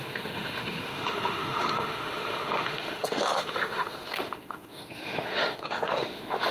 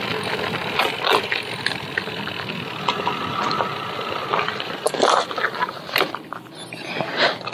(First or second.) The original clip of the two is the second